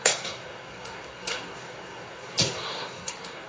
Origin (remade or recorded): remade